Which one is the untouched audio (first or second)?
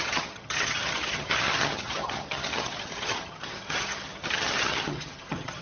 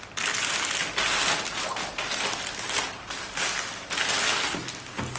second